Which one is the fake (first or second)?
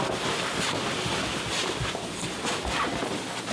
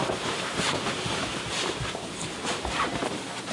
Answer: second